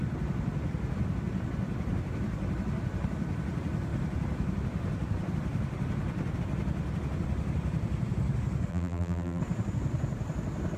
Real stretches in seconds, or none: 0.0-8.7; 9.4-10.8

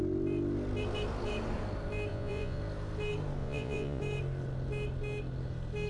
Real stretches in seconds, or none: 0.0-2.1; 2.6-3.4; 4.0-5.9

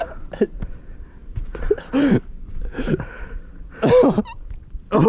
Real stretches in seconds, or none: 0.0-1.2; 3.9-5.1

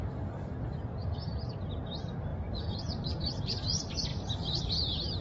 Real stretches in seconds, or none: 0.0-2.3; 3.5-5.2

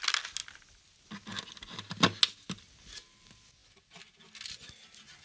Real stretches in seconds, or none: 0.0-5.2

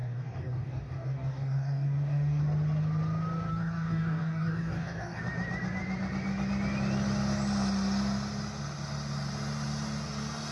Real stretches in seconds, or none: 2.4-3.5; 5.2-10.5

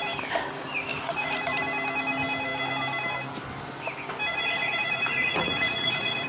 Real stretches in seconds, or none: 0.0-0.9; 1.6-4.3

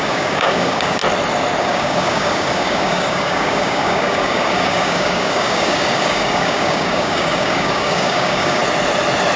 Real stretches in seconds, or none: 1.0-1.6; 8.6-9.4